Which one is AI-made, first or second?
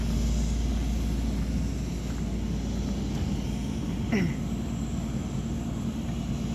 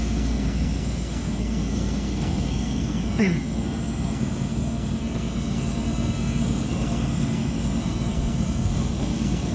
second